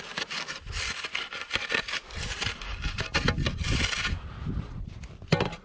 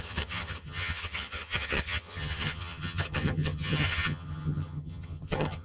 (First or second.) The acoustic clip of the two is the first